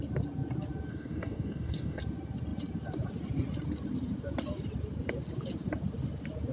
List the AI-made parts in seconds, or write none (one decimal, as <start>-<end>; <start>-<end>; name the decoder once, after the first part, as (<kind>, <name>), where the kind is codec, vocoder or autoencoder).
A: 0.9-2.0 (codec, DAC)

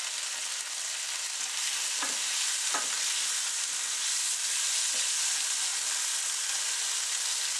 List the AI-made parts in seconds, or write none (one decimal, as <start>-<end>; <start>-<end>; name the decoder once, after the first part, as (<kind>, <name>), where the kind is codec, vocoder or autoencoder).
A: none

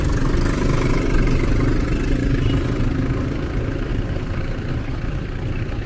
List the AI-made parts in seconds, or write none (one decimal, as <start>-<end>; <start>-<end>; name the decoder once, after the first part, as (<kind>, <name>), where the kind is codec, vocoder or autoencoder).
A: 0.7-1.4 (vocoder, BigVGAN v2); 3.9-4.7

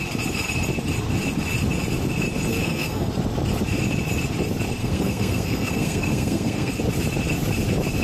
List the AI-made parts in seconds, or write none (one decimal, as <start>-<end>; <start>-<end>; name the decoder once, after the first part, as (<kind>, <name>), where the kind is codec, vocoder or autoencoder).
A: 2.5-3.1 (codec, SNAC); 4.8-6.7